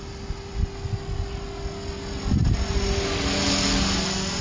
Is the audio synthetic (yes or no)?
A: no